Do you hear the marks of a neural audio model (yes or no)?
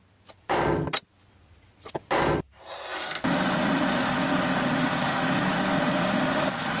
no